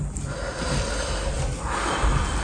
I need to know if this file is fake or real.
real